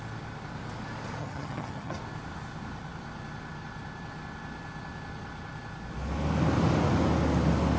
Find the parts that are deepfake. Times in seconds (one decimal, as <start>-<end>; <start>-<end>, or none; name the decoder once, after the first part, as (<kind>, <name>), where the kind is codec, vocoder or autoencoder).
1.2-2.0 (vocoder, HiFi-GAN)